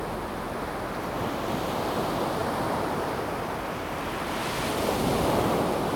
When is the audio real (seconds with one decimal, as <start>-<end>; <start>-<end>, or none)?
0.0-2.4; 3.3-6.0